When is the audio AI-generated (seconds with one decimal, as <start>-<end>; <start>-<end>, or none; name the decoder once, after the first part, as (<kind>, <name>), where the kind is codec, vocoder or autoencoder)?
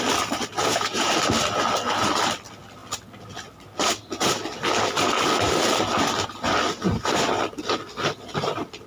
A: 0.6-1.1 (vocoder, Vocos)